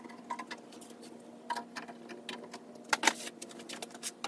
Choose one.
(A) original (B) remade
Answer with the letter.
A